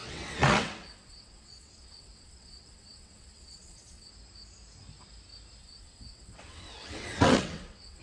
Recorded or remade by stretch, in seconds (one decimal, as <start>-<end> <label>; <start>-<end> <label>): 0.0-4.1 remade; 4.1-5.6 recorded; 5.6-8.0 remade